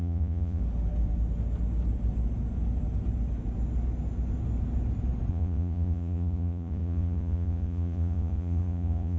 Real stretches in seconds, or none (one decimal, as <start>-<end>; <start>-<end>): 0.6-5.3